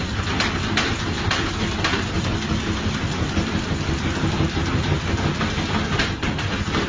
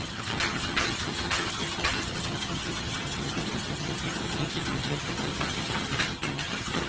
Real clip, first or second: first